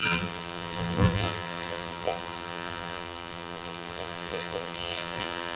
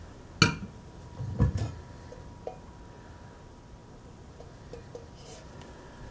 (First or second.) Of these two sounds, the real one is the second